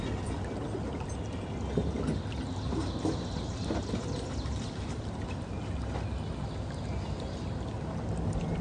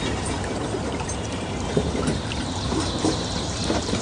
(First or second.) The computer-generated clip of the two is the second